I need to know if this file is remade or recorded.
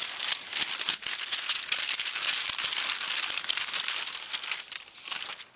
recorded